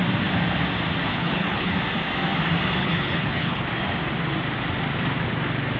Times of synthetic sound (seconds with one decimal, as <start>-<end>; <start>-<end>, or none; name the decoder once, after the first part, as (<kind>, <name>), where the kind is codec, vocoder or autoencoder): 1.1-1.7 (codec, HILCodec); 2.8-3.7